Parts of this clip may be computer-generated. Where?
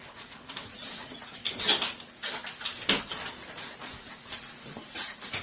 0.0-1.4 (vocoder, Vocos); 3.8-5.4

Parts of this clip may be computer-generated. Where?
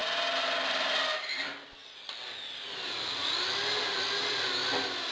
none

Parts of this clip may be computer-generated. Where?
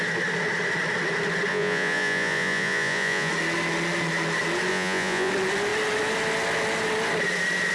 1.5-3.3 (vocoder, Vocos); 4.7-5.3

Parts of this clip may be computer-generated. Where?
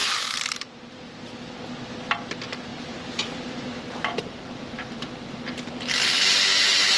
0.0-1.2 (vocoder, BigVGAN v2); 2.7-5.7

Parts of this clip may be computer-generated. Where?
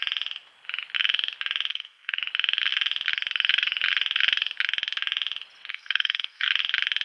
1.7-2.2 (codec, SNAC); 5.7-6.5